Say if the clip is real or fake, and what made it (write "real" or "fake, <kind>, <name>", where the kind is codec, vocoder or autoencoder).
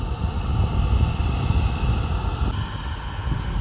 real